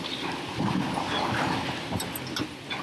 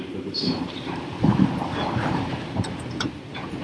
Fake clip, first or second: second